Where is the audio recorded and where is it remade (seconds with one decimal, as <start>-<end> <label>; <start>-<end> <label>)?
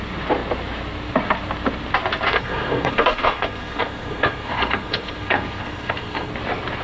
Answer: 0.0-2.3 recorded; 2.3-6.3 remade; 6.3-6.8 recorded